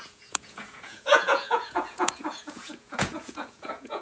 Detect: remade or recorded remade